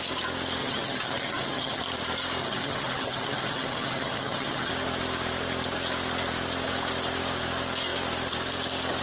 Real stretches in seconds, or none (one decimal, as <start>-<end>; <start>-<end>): 0.0-0.6; 1.8-2.4; 4.7-9.0

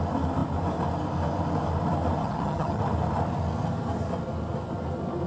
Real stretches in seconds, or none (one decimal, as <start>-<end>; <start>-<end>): 0.0-2.2; 2.8-5.3

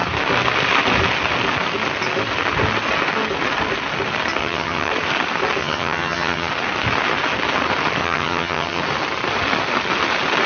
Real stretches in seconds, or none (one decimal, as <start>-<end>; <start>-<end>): 0.0-4.4; 4.9-5.6; 6.5-8.0; 8.8-10.5

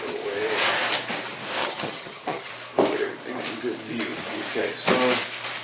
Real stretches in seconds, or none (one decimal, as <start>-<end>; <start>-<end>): 0.0-1.6; 2.5-5.6

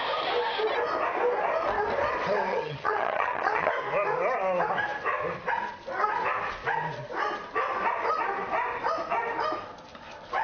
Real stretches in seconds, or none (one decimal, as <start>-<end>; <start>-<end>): 0.0-2.5; 3.7-10.4

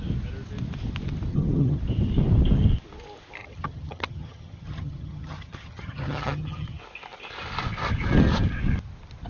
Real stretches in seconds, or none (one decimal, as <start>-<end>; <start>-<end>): 0.0-1.3; 1.8-3.4; 6.8-9.3

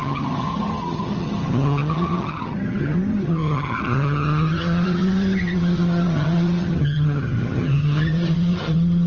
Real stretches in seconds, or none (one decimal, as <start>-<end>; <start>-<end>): none

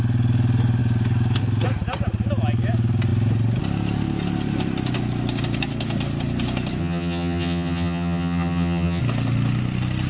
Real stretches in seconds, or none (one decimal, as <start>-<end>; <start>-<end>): 0.0-6.8; 9.0-10.1